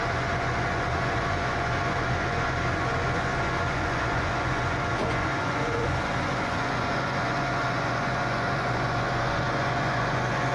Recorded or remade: remade